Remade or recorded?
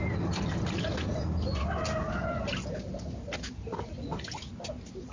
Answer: recorded